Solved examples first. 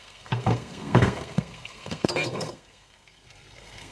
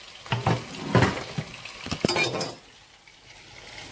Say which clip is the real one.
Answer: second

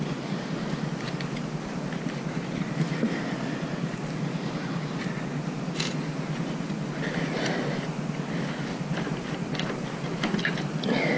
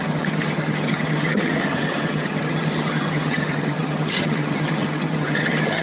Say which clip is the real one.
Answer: first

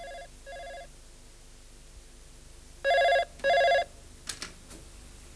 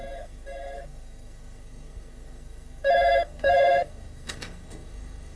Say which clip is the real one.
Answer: first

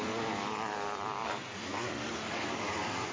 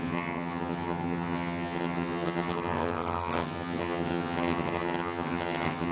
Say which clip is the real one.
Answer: first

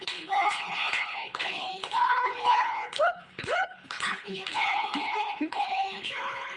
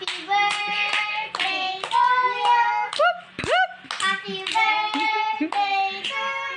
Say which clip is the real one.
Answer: second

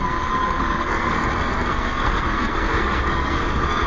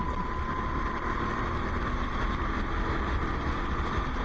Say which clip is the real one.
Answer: second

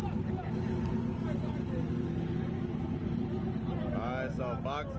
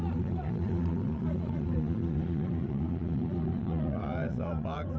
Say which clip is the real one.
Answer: first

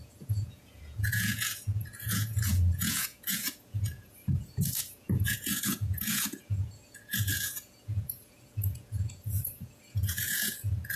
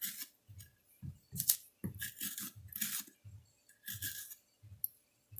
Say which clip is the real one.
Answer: second